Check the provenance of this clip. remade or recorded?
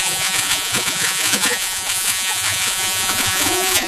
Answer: remade